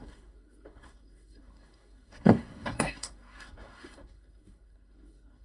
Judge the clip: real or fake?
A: fake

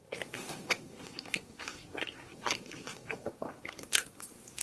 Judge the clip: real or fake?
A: fake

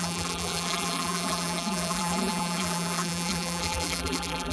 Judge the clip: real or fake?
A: fake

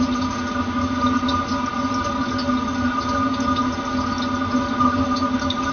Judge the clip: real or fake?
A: real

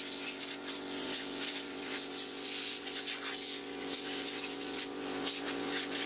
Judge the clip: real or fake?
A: fake